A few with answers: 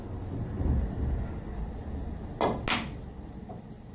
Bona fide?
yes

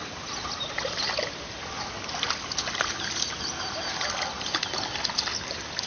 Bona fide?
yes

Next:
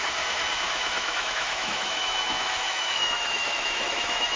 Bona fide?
no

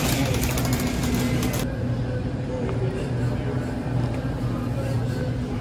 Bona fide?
yes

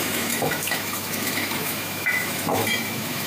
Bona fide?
no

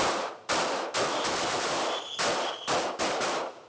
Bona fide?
yes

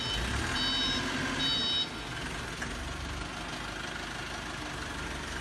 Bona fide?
yes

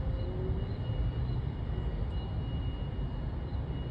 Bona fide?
yes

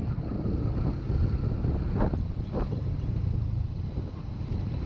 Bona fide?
yes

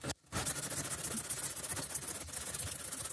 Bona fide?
yes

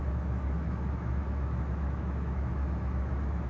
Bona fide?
no